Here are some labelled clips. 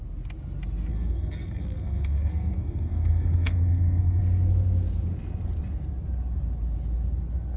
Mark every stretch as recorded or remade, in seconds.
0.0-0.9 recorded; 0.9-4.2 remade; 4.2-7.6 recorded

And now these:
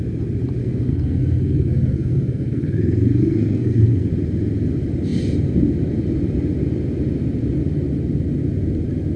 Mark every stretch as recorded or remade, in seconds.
0.0-0.6 recorded; 0.6-4.1 remade; 4.1-9.2 recorded

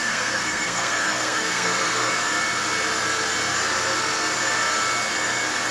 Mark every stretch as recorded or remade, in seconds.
0.0-2.1 remade; 2.1-5.7 recorded